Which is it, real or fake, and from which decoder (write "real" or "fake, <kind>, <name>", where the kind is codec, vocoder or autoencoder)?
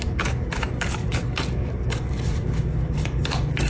fake, codec, DAC